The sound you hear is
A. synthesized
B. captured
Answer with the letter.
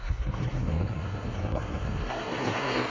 A